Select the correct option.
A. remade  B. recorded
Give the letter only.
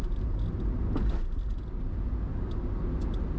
B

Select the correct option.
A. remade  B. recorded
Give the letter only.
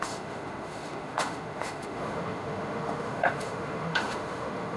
A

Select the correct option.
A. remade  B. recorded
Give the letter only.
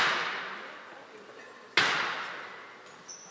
B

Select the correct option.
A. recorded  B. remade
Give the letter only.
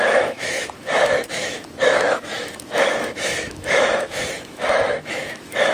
B